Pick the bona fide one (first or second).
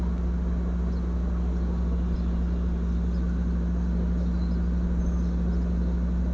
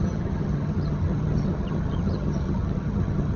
first